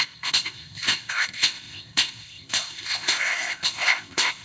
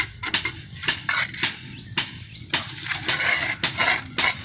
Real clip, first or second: second